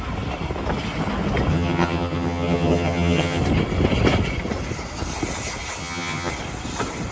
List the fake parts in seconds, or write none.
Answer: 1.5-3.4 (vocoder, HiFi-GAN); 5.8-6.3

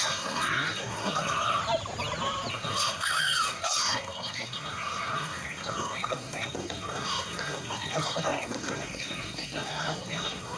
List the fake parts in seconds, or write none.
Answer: 0.0-1.6 (codec, SNAC); 2.5-10.6

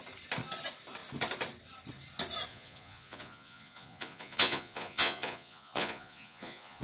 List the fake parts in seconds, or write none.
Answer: 2.5-6.8 (vocoder, Vocos)